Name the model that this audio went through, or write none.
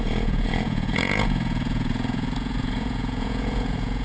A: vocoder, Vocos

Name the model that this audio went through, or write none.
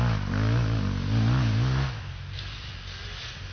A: none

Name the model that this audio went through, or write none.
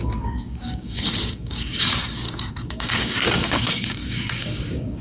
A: codec, DAC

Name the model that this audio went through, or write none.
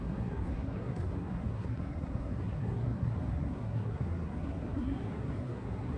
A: codec, SNAC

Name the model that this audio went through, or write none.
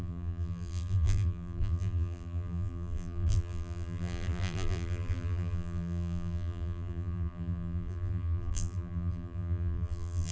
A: vocoder, BigVGAN v2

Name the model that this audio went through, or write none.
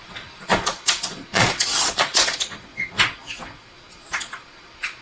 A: vocoder, Vocos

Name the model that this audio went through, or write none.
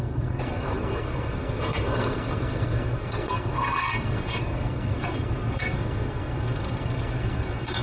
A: codec, SNAC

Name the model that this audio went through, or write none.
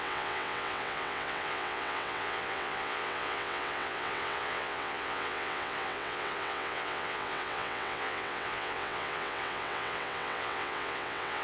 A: vocoder, WaveNeXt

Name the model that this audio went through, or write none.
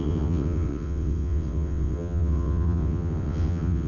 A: vocoder, WaveNeXt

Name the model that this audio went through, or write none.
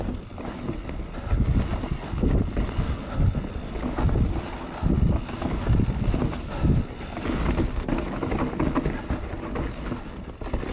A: none